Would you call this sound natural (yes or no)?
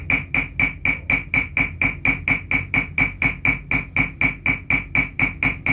yes